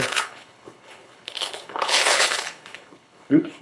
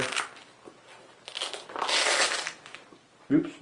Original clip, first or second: second